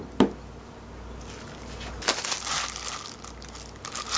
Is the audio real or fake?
real